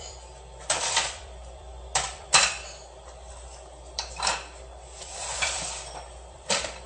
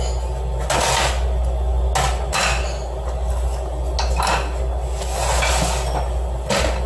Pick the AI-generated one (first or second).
first